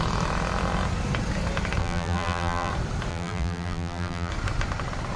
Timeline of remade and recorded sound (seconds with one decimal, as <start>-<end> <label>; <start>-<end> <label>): 0.0-1.8 recorded; 1.8-2.7 remade; 2.7-3.1 recorded; 3.1-4.3 remade; 4.3-5.2 recorded